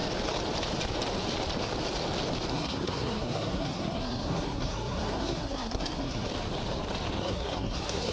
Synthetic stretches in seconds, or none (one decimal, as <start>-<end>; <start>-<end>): 2.5-6.3; 7.2-8.1